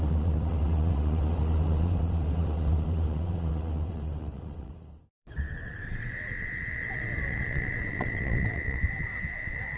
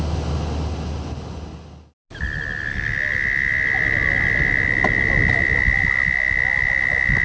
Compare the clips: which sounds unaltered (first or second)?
second